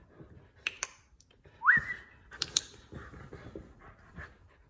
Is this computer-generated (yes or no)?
no